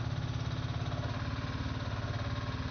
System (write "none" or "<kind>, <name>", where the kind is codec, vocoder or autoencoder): none